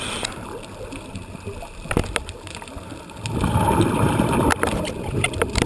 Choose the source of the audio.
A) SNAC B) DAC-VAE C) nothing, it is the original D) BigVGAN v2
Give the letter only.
C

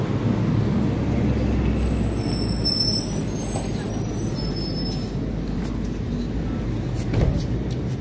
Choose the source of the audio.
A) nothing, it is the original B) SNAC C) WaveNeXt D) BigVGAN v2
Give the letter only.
A